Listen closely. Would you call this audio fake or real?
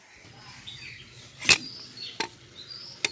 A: real